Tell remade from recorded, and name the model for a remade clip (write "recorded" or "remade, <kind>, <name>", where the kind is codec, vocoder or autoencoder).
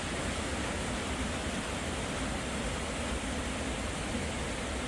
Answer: recorded